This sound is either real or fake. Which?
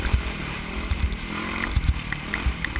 fake